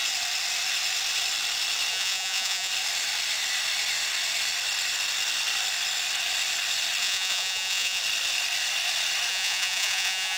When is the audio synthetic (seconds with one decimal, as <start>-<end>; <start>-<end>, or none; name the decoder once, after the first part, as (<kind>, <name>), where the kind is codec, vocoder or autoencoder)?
1.9-2.7 (vocoder, Vocos); 7.0-8.0; 9.3-10.4